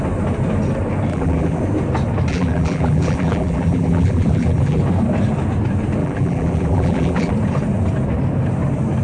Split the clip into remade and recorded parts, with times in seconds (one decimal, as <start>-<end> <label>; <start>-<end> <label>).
0.0-1.1 recorded; 1.1-1.6 remade; 1.6-2.3 recorded; 2.3-4.8 remade; 4.8-6.0 recorded; 6.0-7.3 remade; 7.3-9.0 recorded